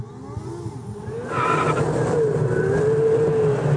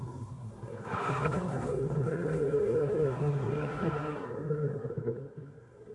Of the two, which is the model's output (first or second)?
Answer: second